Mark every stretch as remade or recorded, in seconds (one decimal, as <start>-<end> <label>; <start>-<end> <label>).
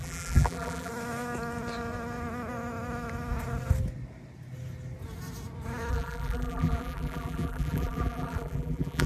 0.0-0.9 remade; 0.9-5.9 recorded; 5.9-9.1 remade